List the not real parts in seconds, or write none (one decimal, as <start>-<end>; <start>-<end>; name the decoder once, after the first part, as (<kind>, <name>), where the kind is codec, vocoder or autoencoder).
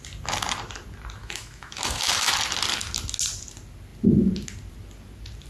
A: 1.2-2.3 (autoencoder, DAC-VAE)